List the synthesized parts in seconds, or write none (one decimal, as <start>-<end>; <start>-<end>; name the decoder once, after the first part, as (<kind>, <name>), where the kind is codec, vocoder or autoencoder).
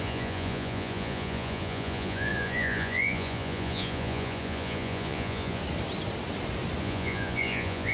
0.0-5.6 (vocoder, Vocos); 6.8-7.9